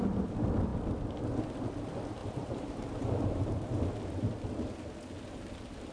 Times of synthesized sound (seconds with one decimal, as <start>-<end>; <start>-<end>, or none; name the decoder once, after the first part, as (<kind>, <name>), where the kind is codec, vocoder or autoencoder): 2.2-3.7 (vocoder, BigVGAN v2)